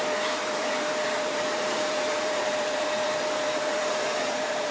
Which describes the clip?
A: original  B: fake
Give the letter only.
B